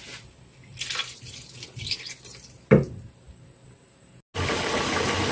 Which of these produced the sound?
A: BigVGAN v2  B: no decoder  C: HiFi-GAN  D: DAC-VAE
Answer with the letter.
B